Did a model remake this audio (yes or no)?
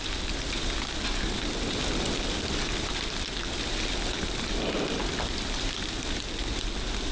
no